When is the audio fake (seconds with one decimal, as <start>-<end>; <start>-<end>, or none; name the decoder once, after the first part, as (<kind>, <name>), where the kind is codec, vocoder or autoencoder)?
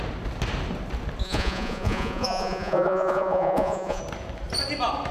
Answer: 1.2-4.0 (vocoder, Vocos)